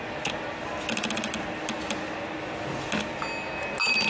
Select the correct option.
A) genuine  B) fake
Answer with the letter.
A